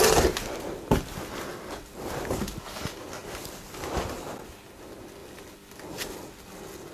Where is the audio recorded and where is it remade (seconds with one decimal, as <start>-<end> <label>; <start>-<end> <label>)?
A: 0.0-6.9 recorded